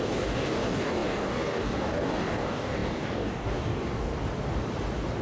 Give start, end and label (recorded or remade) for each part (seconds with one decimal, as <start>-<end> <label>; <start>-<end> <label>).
0.0-4.1 remade; 4.1-5.2 recorded

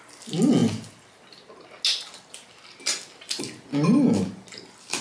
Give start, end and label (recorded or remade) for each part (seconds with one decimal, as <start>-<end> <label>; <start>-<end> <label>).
0.0-5.0 recorded

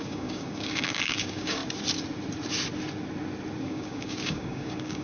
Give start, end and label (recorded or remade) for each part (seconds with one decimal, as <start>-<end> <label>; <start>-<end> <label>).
0.0-1.6 remade; 1.6-3.6 recorded; 3.6-5.0 remade

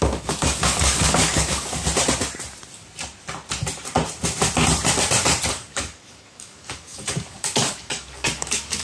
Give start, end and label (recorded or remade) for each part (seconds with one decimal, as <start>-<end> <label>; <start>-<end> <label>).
0.0-1.8 remade; 1.8-5.5 recorded; 5.5-8.8 remade

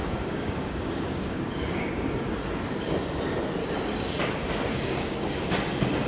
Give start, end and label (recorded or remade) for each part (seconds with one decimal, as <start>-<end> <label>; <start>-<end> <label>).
0.0-2.3 remade; 2.3-3.6 recorded; 3.6-4.2 remade; 4.2-4.7 recorded; 4.7-5.3 remade; 5.3-6.1 recorded

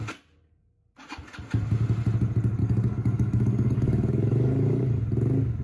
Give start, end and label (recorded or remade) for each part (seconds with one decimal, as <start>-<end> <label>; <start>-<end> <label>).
0.0-2.6 recorded; 2.6-5.0 remade; 5.0-5.6 recorded

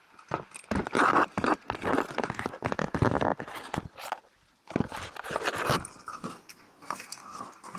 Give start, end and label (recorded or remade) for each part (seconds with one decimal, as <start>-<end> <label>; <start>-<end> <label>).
0.0-6.1 recorded; 6.1-7.8 remade